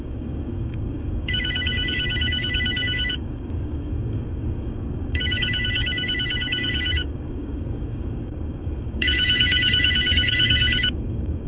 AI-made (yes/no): yes